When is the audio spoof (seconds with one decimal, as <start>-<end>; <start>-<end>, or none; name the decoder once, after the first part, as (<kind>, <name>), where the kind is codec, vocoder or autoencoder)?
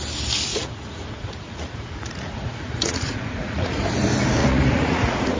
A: 0.5-3.7 (vocoder, Vocos); 4.4-5.4